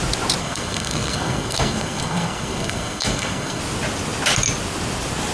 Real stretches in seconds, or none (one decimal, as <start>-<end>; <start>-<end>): 0.0-0.4; 3.6-5.3